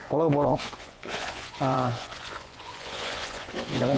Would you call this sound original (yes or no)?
no